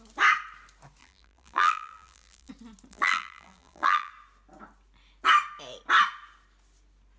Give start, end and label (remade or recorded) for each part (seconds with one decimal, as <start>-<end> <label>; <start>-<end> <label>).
0.0-1.0 recorded; 1.0-2.5 remade; 2.5-2.9 recorded; 2.9-4.1 remade; 4.1-7.2 recorded